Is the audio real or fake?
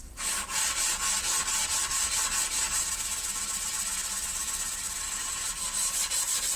real